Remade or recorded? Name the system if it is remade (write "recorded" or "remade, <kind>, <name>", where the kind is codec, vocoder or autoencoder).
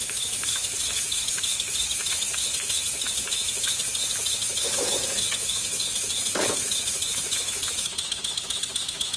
remade, autoencoder, DAC-VAE